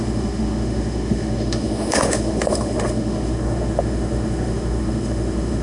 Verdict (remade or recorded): remade